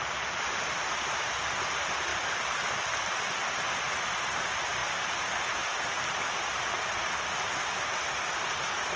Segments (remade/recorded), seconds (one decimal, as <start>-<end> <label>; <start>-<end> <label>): 0.0-9.0 recorded